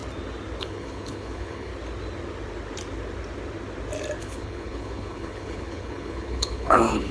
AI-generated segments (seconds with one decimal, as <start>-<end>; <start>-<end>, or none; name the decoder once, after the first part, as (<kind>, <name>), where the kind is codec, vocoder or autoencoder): 0.6-1.7 (codec, HILCodec); 4.2-7.1